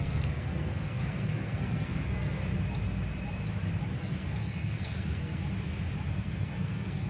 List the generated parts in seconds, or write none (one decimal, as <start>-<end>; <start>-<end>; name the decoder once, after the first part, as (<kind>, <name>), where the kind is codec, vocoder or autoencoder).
0.0-2.4 (codec, SNAC); 4.0-5.4; 6.1-7.1